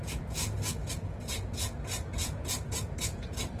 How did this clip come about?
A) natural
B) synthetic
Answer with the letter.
B